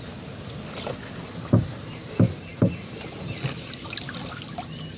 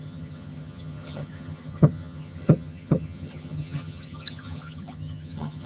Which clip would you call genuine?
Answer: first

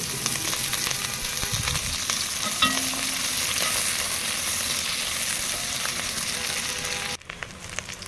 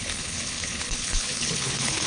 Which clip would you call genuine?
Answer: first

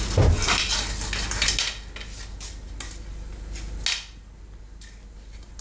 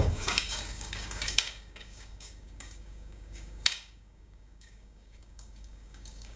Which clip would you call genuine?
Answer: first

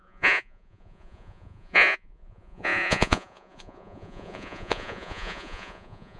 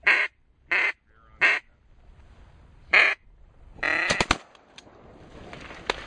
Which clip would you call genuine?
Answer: second